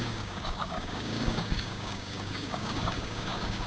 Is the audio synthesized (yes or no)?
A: yes